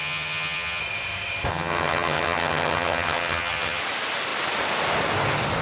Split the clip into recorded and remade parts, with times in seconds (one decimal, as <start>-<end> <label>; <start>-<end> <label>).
0.0-0.8 remade; 0.8-1.5 recorded; 1.5-3.8 remade; 3.8-5.6 recorded